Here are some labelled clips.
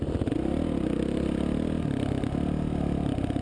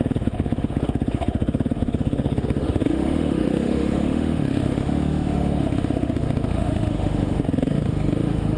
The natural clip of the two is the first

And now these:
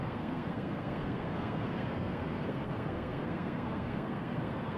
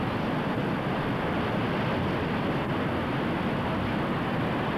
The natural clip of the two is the second